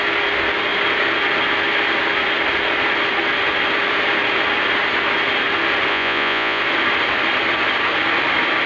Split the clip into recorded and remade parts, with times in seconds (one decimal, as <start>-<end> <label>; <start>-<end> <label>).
0.0-5.9 recorded; 5.9-6.6 remade; 6.6-8.7 recorded

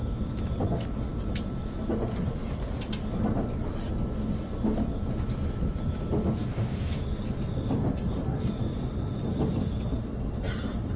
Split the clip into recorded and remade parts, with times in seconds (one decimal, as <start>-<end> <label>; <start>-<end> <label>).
0.0-0.5 remade; 0.5-6.4 recorded; 6.4-7.0 remade; 7.0-11.0 recorded

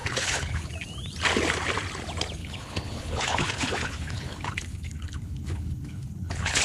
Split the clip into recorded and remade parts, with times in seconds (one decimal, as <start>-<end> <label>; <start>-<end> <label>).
0.0-0.7 remade; 0.7-2.4 recorded; 2.4-6.6 remade

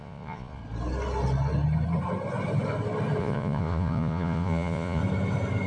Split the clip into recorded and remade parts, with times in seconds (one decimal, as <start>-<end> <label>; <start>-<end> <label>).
0.0-0.6 remade; 0.6-3.2 recorded; 3.2-5.0 remade; 5.0-5.7 recorded

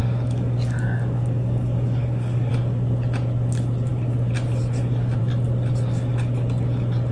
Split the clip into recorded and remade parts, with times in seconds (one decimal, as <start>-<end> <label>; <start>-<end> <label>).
0.0-2.5 remade; 2.5-7.1 recorded

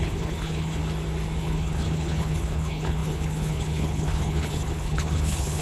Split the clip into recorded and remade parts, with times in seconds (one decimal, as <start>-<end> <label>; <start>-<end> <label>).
0.0-0.8 remade; 0.8-1.4 recorded; 1.4-5.6 remade

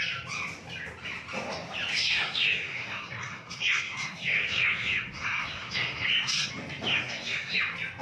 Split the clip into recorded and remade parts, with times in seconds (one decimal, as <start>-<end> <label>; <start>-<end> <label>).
0.0-1.9 recorded; 1.9-6.5 remade; 6.5-6.9 recorded; 6.9-7.6 remade; 7.6-8.0 recorded

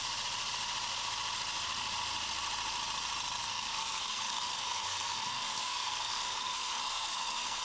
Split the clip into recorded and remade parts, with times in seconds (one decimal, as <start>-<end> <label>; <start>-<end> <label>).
0.0-3.4 recorded; 3.4-7.6 remade